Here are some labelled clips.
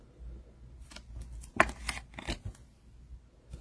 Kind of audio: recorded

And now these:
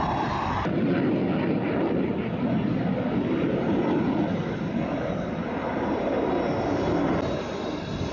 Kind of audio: recorded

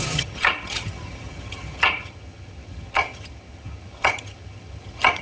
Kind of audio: remade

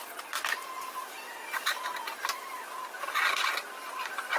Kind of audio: recorded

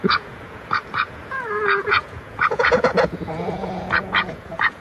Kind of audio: remade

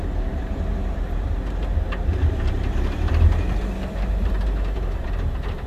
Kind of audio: remade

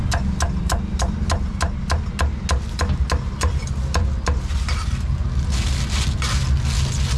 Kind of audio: recorded